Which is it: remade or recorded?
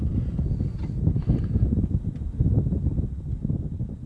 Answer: recorded